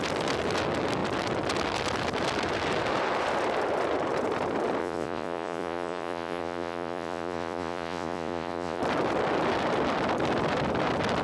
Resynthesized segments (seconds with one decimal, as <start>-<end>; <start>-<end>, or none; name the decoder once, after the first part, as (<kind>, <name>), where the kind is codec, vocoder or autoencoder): 4.8-8.8 (vocoder, Vocos)